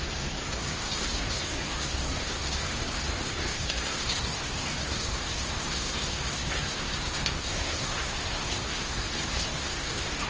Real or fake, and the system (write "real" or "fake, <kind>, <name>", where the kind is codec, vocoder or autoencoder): fake, codec, SNAC